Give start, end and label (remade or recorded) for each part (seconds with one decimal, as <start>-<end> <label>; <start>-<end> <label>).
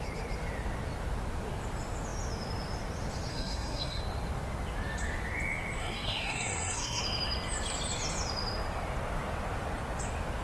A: 0.0-3.3 recorded; 3.3-4.0 remade; 4.0-5.8 recorded; 5.8-7.0 remade; 7.0-10.4 recorded